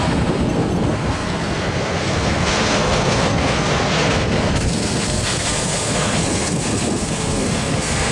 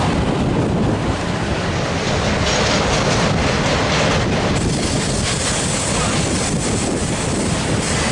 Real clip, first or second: second